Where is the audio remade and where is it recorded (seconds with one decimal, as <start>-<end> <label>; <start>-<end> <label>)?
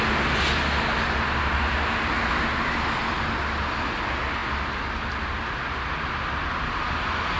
0.0-7.4 recorded